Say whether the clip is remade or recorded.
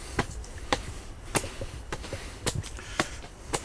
remade